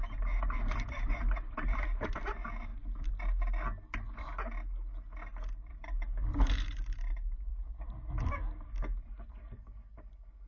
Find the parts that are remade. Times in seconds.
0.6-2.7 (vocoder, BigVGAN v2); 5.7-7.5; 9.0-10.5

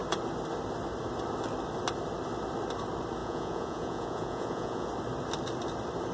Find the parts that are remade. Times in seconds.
3.2-4.9 (vocoder, Vocos)

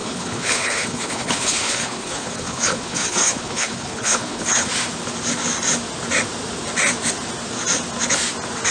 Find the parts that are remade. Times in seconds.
0.0-4.7 (codec, HILCodec)

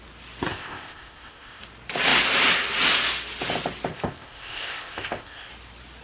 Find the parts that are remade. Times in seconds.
0.5-1.6 (codec, ZipCodec); 3.9-5.5

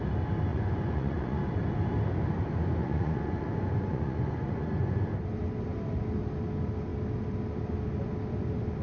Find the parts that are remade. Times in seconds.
0.5-1.4 (vocoder, Vocos); 2.8-5.0